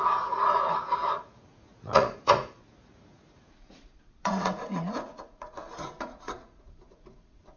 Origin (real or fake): fake